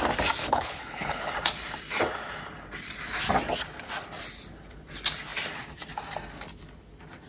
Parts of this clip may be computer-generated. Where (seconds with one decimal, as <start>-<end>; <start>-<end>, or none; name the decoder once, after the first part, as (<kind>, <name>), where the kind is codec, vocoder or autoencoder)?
0.4-1.3 (codec, HILCodec)